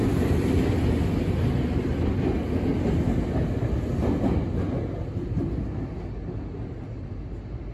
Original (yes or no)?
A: yes